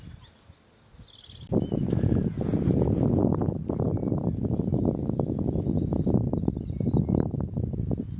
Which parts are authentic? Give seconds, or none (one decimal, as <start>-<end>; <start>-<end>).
0.0-8.2